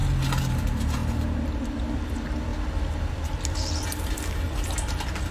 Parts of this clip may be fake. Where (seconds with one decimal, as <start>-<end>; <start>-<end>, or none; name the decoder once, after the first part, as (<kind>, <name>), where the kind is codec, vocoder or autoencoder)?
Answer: 0.5-1.0 (vocoder, BigVGAN v2); 1.9-2.5; 3.1-5.3